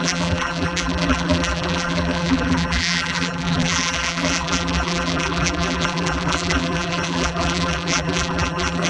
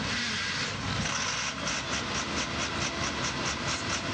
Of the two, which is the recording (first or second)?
second